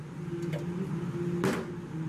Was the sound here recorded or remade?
recorded